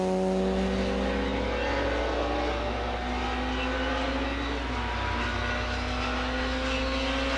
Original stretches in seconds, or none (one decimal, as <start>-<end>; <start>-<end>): 0.0-7.4

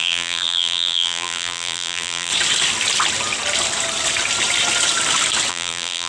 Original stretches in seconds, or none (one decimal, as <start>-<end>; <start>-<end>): 2.3-5.5

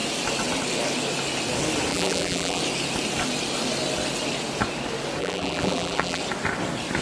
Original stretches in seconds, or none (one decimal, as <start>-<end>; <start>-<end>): 0.0-1.9; 2.6-5.2; 6.2-7.0

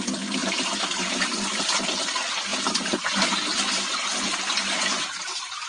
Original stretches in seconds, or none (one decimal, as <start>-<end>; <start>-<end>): 0.0-0.4; 1.8-2.5

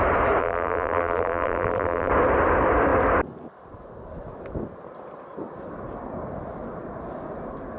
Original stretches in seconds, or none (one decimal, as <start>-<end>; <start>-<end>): 0.0-0.4; 2.1-7.8

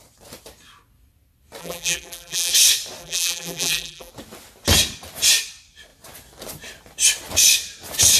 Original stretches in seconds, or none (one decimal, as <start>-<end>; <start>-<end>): 0.0-1.6; 2.5-3.0; 4.1-8.2

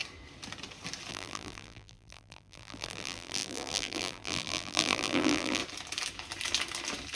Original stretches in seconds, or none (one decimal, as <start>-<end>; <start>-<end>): 0.0-1.1; 5.6-7.2